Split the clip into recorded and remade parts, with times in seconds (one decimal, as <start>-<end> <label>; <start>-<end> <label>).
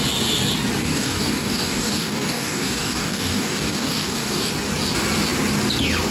0.0-0.8 recorded; 0.8-4.5 remade; 4.5-6.1 recorded